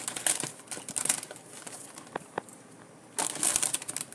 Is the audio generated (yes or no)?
yes